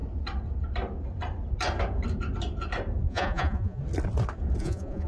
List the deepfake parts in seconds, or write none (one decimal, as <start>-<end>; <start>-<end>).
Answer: 3.1-3.8; 4.6-5.1